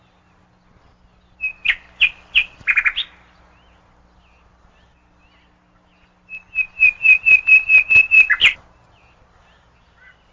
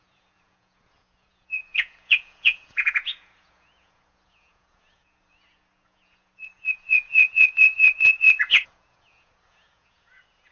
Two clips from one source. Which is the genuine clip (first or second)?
first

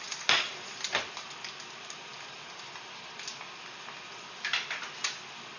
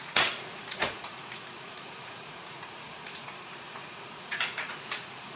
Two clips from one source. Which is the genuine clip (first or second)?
first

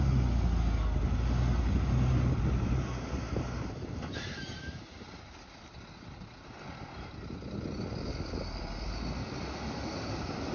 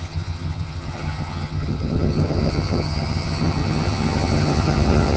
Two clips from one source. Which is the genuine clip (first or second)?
first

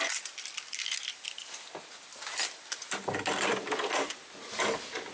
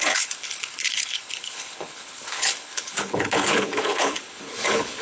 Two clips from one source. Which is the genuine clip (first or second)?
first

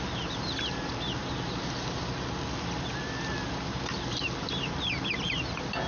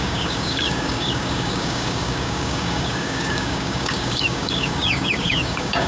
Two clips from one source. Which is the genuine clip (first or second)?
first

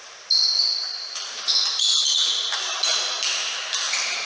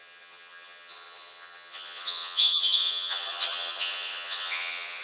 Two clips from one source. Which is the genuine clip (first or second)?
first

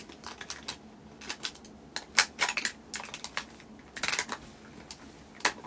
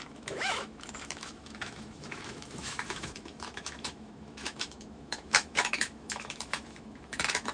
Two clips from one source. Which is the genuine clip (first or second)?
first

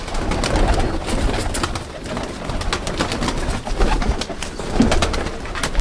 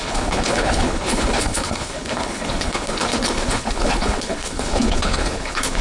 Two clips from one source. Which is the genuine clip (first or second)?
first